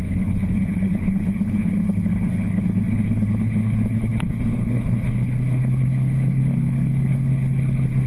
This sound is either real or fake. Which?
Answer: fake